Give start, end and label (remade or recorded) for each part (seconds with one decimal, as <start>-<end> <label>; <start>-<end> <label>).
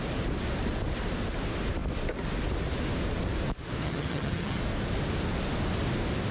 0.0-3.8 recorded; 3.8-4.6 remade; 4.6-6.3 recorded